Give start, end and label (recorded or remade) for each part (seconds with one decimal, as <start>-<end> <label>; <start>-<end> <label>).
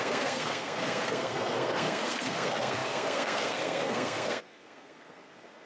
0.0-5.7 remade